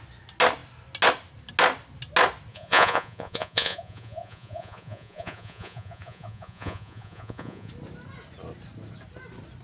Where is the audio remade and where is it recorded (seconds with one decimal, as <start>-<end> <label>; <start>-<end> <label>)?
0.0-2.5 recorded; 2.5-7.7 remade; 7.7-9.6 recorded

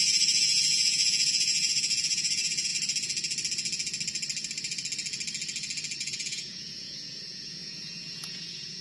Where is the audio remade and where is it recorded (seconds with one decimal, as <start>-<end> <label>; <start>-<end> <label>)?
0.0-2.7 remade; 2.7-6.0 recorded; 6.0-8.8 remade